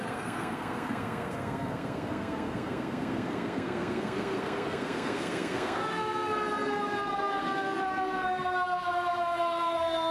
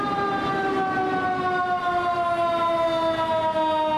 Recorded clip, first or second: second